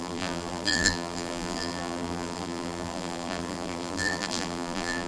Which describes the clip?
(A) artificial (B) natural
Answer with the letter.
A